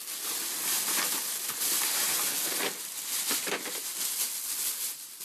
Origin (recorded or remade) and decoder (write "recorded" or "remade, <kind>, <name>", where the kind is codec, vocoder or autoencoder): recorded